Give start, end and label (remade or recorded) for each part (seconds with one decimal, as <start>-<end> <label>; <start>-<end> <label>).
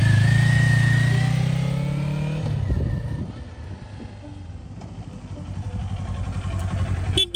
0.0-7.4 recorded